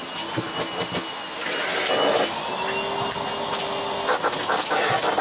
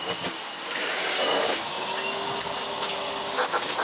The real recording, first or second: first